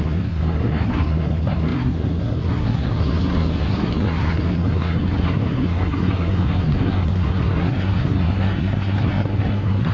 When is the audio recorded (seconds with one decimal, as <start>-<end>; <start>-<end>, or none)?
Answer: none